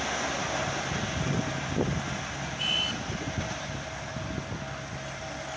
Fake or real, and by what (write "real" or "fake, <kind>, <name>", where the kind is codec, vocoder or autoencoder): real